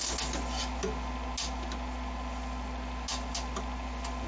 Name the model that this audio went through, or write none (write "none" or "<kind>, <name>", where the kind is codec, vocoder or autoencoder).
none